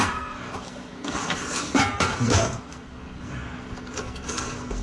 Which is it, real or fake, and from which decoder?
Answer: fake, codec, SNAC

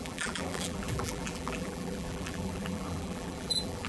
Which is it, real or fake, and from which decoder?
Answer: fake, vocoder, BigVGAN v2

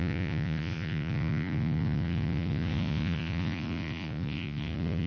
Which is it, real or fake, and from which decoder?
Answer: fake, vocoder, Vocos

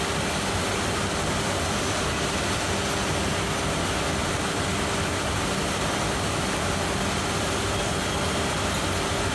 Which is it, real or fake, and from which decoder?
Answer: real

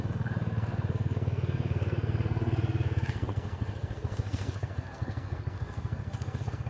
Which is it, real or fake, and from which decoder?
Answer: fake, codec, SNAC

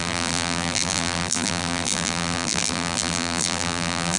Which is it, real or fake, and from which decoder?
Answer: fake, vocoder, BigVGAN v2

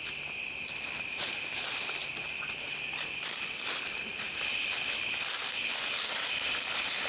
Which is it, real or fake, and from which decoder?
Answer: fake, vocoder, BigVGAN v2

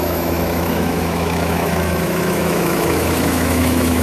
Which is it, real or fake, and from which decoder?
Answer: fake, autoencoder, DAC-VAE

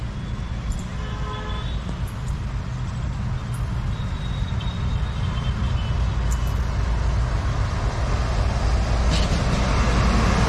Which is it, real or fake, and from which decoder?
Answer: real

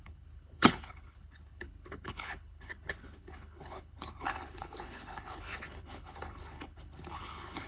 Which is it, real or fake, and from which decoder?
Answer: fake, codec, HILCodec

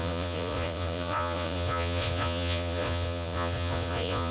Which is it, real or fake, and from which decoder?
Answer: fake, vocoder, Vocos